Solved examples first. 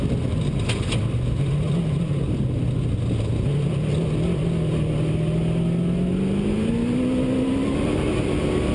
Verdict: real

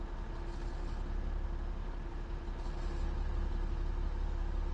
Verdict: real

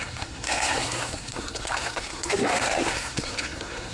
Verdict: fake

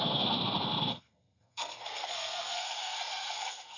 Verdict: fake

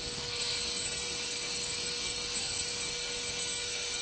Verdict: fake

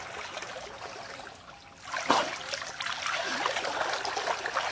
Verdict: real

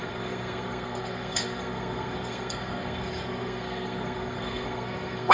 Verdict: fake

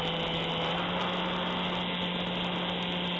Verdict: real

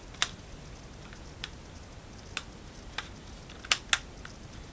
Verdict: real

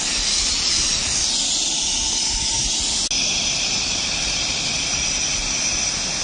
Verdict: real